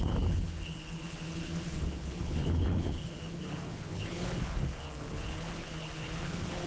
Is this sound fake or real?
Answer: fake